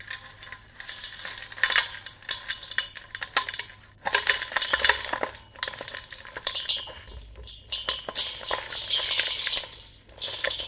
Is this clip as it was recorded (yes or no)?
yes